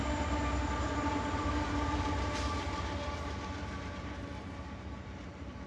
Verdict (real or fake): fake